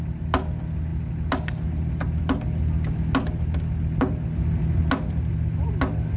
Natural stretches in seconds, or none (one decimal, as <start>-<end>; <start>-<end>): 0.0-6.2